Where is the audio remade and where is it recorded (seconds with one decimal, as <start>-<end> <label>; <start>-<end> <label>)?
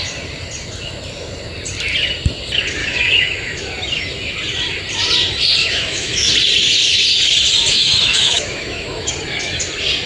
0.0-2.8 recorded; 2.8-3.6 remade; 3.6-5.6 recorded; 5.6-6.3 remade; 6.3-7.7 recorded; 7.7-9.1 remade; 9.1-10.1 recorded